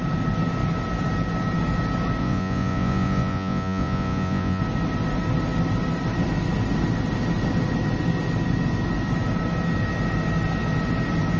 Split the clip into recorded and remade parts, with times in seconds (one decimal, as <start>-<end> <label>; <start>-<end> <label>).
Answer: 0.0-2.2 recorded; 2.2-4.6 remade; 4.6-11.4 recorded